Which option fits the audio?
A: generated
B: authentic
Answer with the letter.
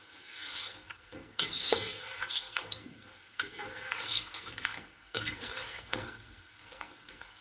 A